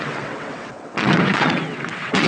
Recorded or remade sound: remade